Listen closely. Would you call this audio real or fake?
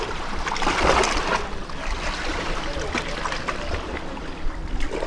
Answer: real